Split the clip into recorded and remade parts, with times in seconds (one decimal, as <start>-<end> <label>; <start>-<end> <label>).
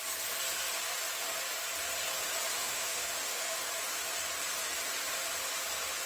0.0-2.6 recorded; 2.6-3.6 remade; 3.6-6.1 recorded